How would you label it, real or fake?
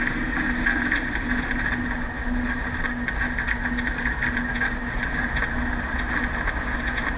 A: real